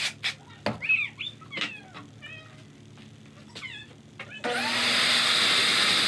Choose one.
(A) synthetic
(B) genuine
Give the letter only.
B